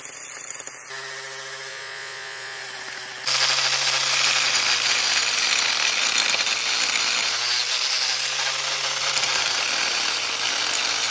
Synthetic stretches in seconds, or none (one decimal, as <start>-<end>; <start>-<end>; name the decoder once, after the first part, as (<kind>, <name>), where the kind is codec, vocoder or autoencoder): 1.7-2.6 (vocoder, Vocos)